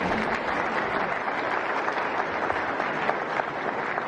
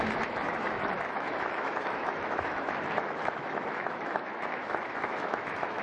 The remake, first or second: second